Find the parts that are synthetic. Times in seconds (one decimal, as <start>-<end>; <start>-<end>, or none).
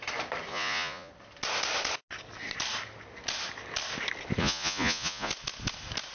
0.5-1.1; 4.4-5.3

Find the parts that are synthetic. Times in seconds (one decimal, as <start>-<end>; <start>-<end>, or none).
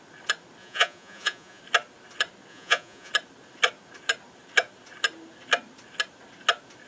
0.6-1.6; 2.5-3.1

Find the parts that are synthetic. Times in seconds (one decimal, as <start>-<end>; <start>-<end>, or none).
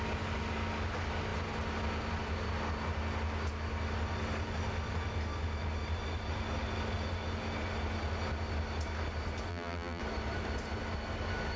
9.5-10.0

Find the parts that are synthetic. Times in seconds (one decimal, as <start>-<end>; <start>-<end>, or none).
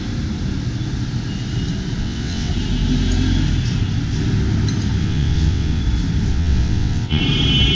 2.0-2.5; 5.0-5.8; 6.3-7.2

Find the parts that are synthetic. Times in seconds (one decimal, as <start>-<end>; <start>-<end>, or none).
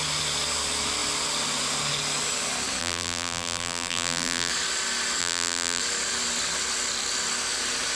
2.8-4.5; 5.2-5.8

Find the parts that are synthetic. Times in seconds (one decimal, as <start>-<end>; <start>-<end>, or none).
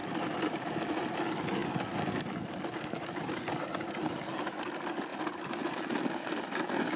none